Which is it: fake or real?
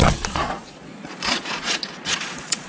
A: fake